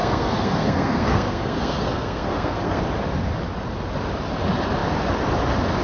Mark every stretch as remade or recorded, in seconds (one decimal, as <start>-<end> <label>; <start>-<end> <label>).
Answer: 0.0-2.8 remade; 2.8-5.8 recorded